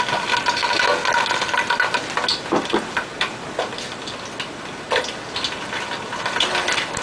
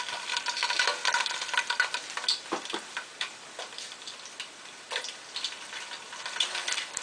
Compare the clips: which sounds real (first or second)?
first